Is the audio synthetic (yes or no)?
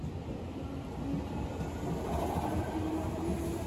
no